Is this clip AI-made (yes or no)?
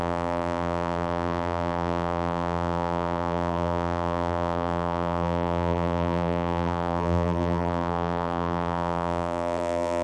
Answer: yes